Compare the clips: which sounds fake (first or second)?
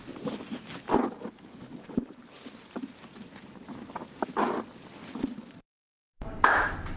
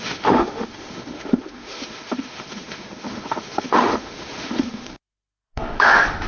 second